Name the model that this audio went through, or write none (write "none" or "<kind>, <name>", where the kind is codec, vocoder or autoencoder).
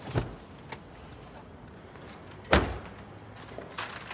none